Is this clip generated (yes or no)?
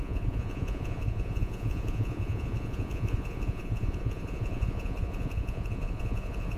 yes